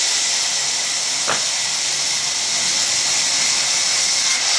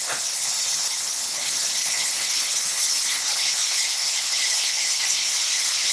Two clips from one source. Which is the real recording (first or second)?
first